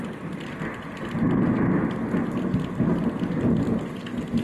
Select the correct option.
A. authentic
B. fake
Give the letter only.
A